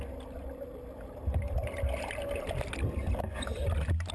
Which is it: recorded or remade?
recorded